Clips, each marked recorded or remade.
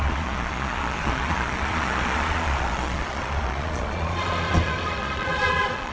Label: remade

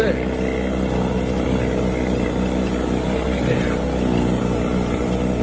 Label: recorded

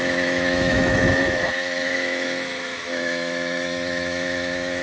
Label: remade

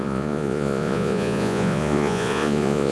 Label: remade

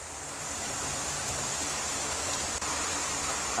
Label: remade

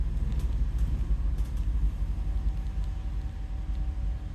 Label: recorded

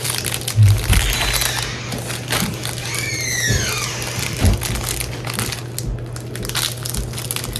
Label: recorded